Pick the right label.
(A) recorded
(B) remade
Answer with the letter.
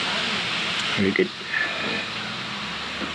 A